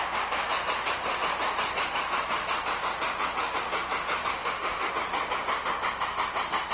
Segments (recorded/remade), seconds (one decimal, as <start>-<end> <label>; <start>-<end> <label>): 0.0-4.3 recorded; 4.3-4.9 remade; 4.9-6.7 recorded